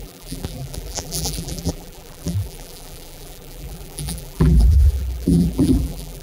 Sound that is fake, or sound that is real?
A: fake